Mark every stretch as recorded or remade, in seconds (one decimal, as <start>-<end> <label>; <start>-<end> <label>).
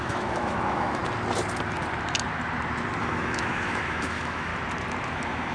0.0-1.0 remade; 1.0-3.0 recorded; 3.0-4.5 remade; 4.5-5.1 recorded; 5.1-5.5 remade